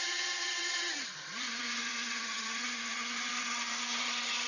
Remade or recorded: remade